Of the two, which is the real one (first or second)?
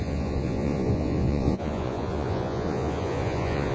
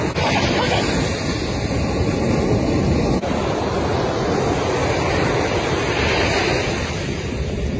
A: second